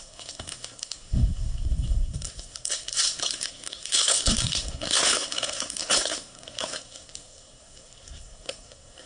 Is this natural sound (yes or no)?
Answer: no